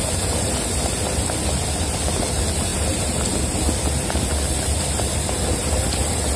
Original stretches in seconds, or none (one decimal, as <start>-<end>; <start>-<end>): 0.0-2.7; 3.3-6.4